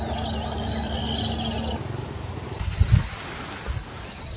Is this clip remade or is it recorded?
recorded